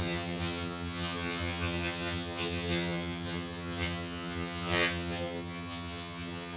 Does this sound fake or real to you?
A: fake